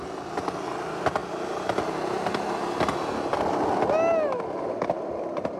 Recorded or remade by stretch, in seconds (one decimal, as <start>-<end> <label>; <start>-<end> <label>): 0.0-5.6 recorded